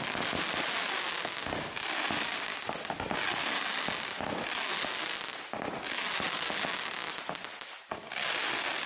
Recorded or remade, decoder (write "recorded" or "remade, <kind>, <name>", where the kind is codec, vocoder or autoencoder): recorded